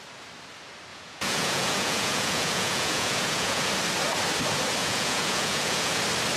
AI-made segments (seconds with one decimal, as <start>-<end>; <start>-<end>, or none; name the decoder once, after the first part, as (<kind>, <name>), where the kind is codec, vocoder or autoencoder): 0.9-3.7 (vocoder, Vocos); 4.8-6.0